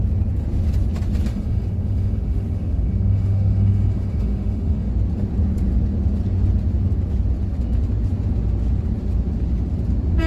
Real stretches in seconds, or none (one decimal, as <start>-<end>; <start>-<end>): 0.0-1.3; 4.9-10.3